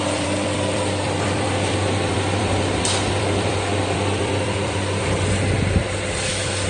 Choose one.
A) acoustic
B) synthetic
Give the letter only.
B